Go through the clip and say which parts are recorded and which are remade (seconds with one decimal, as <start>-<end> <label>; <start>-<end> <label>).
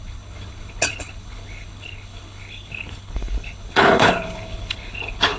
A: 0.0-5.4 remade